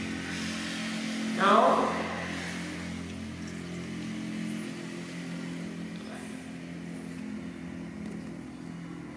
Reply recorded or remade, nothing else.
recorded